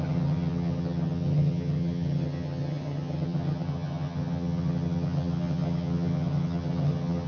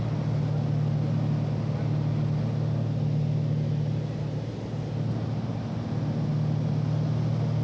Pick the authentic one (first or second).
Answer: second